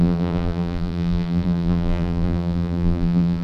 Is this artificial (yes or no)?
yes